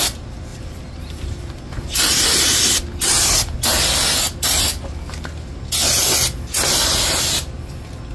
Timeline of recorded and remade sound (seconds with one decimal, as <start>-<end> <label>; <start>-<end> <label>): 0.0-0.5 recorded; 0.5-2.6 remade; 2.6-8.1 recorded